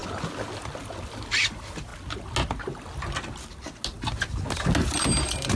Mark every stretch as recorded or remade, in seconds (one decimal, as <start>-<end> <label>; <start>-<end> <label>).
0.0-5.6 recorded